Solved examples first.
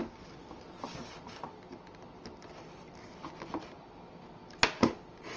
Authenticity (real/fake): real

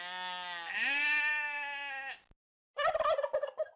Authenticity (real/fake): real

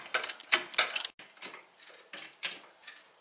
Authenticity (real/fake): real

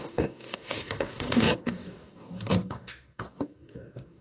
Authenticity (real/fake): fake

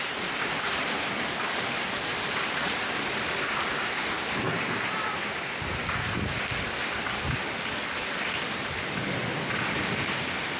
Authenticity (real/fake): real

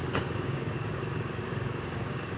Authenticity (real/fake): fake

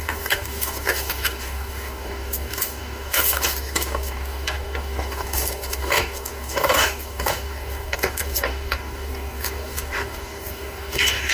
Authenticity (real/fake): fake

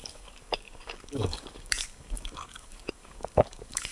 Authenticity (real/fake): fake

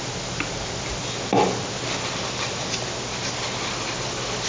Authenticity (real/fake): real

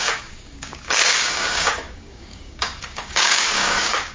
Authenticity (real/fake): fake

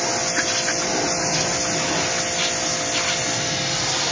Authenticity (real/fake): real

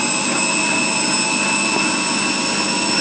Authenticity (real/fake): real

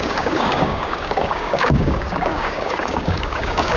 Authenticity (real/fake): fake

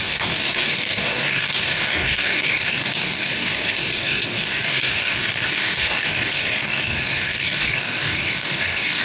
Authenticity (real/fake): fake